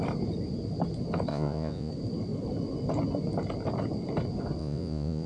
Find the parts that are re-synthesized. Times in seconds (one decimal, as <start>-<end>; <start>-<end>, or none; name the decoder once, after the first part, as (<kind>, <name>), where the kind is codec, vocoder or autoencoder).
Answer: 1.3-1.9 (vocoder, Vocos); 4.6-5.3